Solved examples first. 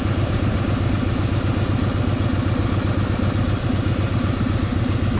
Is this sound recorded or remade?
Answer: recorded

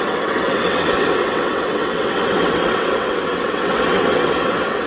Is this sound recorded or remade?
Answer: remade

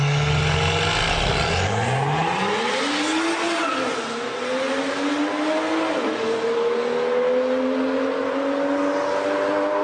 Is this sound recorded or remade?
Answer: recorded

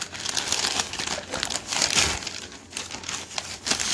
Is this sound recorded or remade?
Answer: recorded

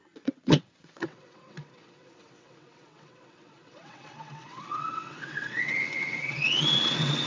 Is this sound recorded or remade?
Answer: remade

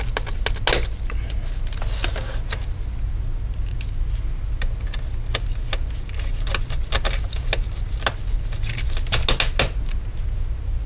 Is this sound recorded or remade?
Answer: recorded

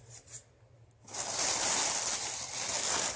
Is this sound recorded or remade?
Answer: recorded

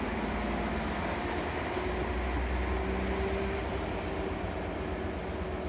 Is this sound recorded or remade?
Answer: recorded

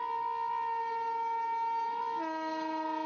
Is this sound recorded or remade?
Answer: recorded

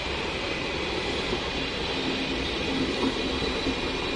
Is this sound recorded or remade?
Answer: recorded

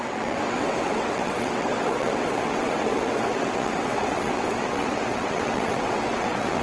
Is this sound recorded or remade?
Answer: remade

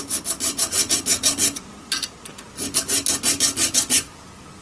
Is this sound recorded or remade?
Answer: recorded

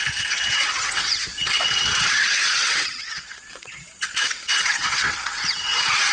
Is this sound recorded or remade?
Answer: remade